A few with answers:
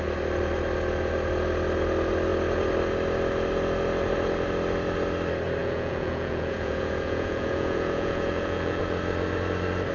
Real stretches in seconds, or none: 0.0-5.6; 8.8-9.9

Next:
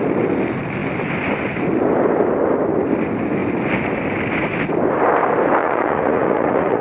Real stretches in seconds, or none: 0.0-5.6

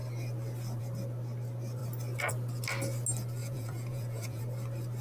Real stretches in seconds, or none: 0.0-3.4; 4.4-5.0

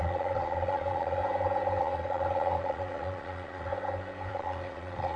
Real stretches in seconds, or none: 1.2-1.8; 3.7-4.3